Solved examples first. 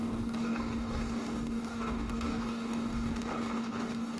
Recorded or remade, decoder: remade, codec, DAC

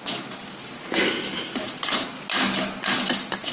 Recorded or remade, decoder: recorded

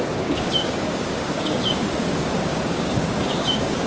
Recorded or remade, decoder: remade, codec, DAC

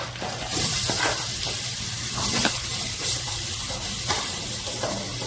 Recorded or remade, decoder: recorded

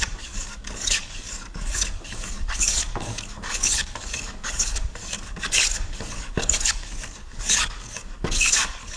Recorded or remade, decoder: remade, codec, DAC